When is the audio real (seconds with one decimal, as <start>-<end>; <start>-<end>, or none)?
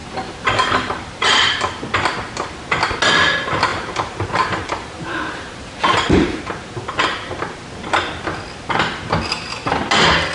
1.6-3.7; 6.4-10.3